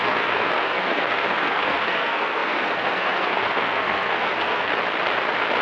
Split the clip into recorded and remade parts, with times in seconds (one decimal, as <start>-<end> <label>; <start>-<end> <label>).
0.0-4.7 remade; 4.7-5.6 recorded